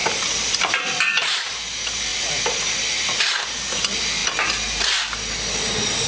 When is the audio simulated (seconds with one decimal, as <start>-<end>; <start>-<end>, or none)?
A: 0.0-0.7; 4.2-5.3